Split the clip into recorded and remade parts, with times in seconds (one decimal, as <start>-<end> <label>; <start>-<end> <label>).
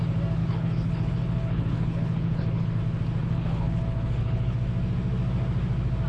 0.0-0.4 recorded; 0.4-2.8 remade; 2.8-3.2 recorded; 3.2-4.6 remade; 4.6-6.1 recorded